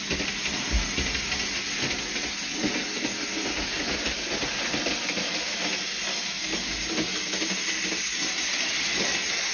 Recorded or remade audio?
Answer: recorded